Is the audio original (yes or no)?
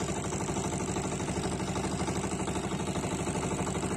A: yes